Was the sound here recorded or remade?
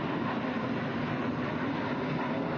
recorded